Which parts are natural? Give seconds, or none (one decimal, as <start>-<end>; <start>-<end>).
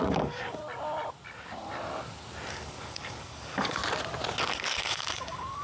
0.6-2.5; 3.8-4.6